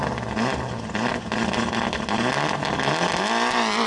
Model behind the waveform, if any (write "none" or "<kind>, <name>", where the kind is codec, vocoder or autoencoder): none